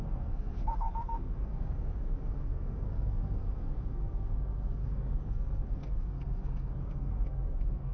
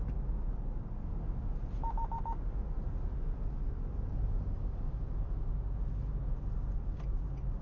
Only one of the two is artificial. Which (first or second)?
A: first